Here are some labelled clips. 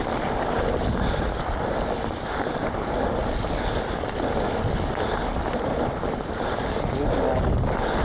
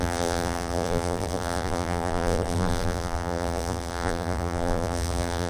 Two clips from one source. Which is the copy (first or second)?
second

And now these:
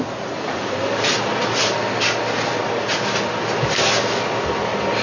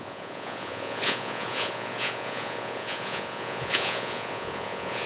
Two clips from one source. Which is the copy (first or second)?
second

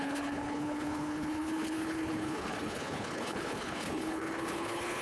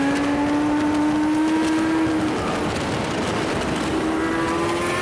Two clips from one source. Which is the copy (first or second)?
first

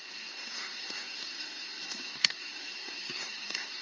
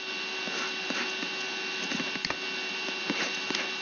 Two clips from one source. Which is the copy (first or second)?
first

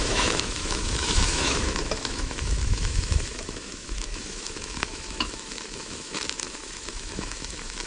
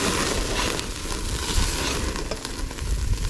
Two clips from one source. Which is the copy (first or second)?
first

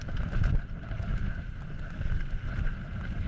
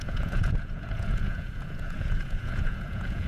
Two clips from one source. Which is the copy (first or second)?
second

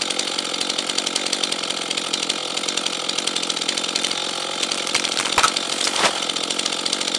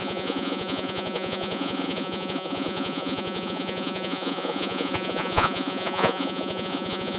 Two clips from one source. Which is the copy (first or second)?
second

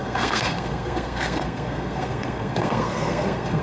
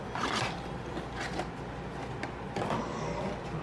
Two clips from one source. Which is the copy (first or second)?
first